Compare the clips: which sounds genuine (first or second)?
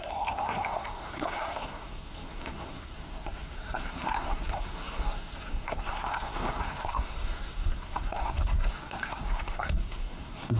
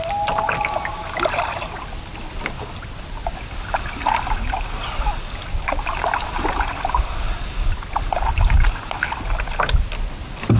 second